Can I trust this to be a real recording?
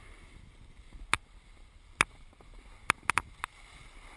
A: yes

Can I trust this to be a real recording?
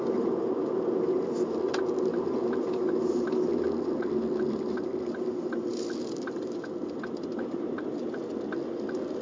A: yes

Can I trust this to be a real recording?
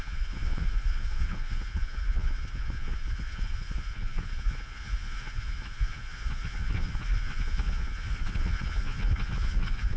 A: no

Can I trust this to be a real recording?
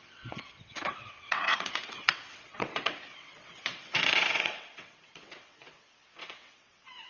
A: no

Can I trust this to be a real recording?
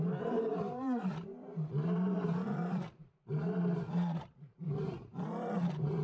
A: no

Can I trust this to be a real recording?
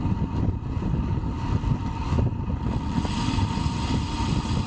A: yes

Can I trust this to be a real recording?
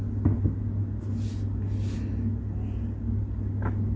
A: yes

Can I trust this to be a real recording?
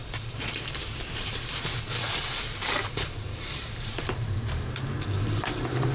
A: no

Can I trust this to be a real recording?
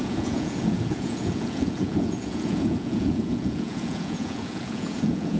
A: no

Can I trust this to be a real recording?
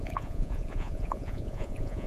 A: no